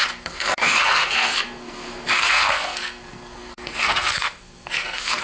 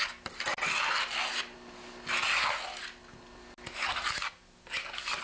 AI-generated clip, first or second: first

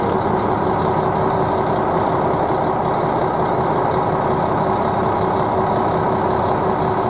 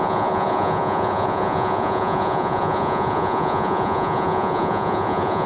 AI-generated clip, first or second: second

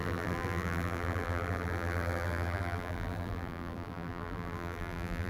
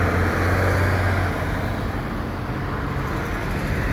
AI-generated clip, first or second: first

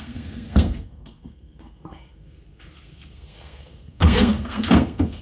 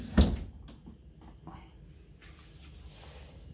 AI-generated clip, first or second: first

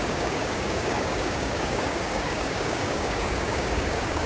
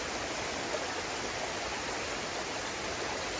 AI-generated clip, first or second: first